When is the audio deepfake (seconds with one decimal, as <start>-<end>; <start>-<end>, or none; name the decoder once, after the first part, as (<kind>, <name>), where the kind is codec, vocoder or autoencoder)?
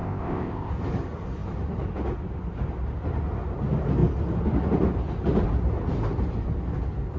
0.0-0.7 (codec, ZipCodec)